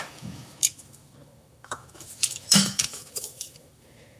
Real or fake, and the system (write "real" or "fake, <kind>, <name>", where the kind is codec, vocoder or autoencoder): fake, autoencoder, DAC-VAE